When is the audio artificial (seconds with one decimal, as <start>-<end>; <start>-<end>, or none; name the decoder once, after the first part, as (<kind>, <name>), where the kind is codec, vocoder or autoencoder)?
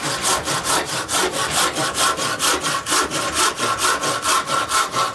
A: none